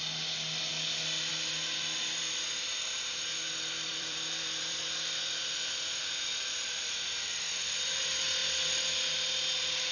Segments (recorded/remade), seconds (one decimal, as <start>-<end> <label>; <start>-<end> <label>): 0.0-3.9 recorded; 3.9-8.0 remade; 8.0-9.9 recorded